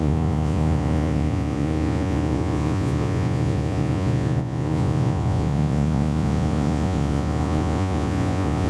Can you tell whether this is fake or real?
fake